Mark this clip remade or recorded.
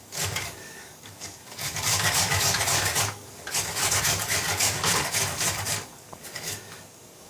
remade